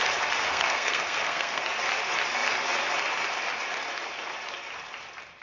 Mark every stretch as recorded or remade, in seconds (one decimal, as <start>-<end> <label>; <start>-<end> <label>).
0.0-0.5 recorded; 0.5-1.6 remade; 1.6-5.4 recorded